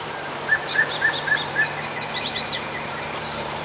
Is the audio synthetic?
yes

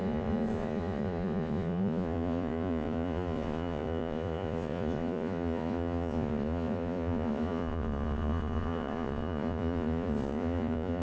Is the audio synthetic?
yes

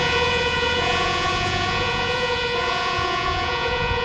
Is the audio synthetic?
yes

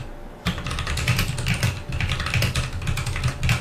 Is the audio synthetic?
no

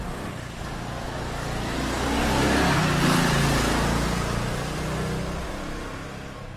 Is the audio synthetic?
no